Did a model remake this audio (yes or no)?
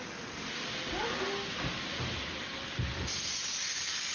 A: no